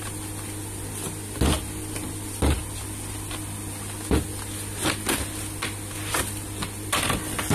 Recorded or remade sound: recorded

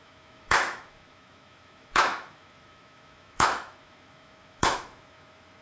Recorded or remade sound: remade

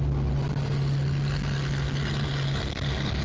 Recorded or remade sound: recorded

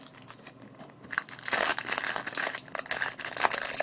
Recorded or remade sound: recorded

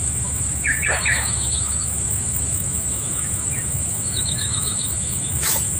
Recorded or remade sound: remade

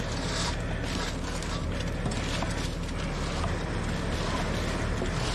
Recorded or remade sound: recorded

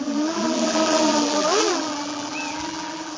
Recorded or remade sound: remade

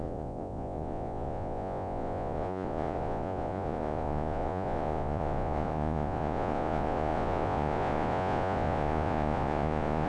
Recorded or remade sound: remade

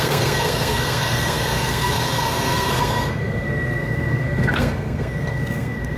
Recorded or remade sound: remade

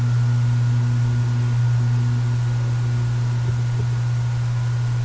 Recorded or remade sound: recorded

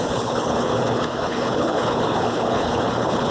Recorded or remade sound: remade